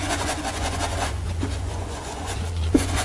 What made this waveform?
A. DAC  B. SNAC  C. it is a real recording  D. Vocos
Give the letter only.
D